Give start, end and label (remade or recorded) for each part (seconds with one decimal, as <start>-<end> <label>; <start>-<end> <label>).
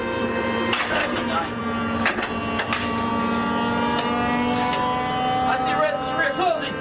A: 0.0-1.6 remade; 1.6-2.6 recorded; 2.6-3.1 remade; 3.1-6.8 recorded